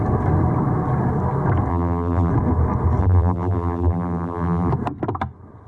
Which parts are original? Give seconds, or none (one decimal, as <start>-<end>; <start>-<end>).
0.0-1.7; 2.3-3.0; 4.7-5.7